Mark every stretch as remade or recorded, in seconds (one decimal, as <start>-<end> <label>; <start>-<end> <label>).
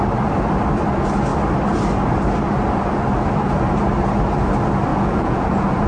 0.0-4.9 recorded; 4.9-5.9 remade